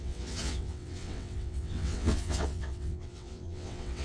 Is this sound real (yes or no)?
no